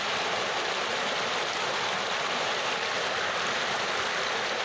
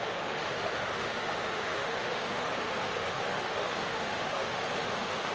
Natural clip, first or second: first